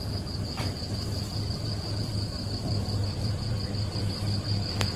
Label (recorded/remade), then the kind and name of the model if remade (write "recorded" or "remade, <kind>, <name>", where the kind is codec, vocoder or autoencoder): remade, vocoder, BigVGAN v2